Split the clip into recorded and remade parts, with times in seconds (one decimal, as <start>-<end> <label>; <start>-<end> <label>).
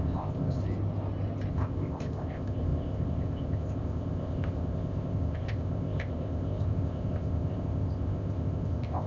0.0-0.6 remade; 0.6-1.5 recorded; 1.5-9.1 remade